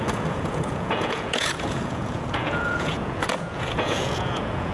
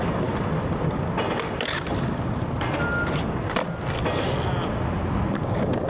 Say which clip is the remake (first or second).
first